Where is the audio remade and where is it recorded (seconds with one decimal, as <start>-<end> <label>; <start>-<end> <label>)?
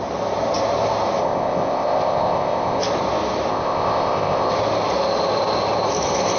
0.0-1.2 recorded; 1.2-2.8 remade; 2.8-3.5 recorded; 3.5-4.5 remade; 4.5-6.4 recorded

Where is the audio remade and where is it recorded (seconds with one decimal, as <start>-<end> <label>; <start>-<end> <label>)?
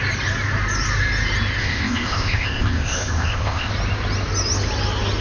0.0-1.6 recorded; 1.6-3.7 remade; 3.7-5.2 recorded